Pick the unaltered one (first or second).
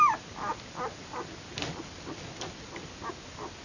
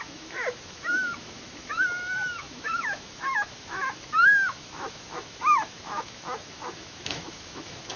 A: first